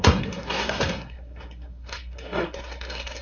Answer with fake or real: fake